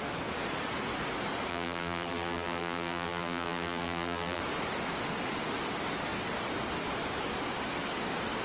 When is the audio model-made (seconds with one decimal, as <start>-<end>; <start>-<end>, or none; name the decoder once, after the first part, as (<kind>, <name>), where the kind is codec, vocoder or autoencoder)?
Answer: 1.5-4.4 (vocoder, BigVGAN v2)